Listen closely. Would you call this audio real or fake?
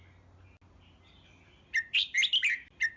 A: real